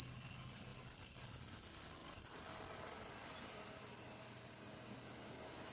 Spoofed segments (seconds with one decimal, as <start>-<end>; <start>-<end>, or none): none